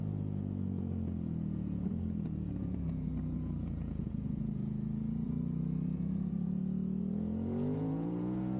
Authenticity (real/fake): fake